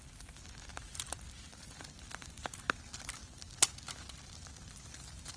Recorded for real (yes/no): yes